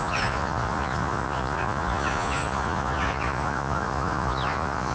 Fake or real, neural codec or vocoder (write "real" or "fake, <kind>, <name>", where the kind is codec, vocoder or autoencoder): fake, vocoder, Vocos